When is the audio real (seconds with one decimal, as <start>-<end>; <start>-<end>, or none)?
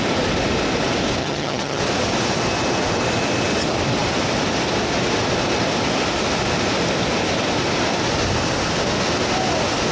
0.0-1.2; 1.8-9.9